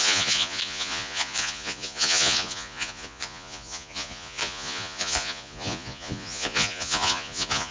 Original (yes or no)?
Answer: no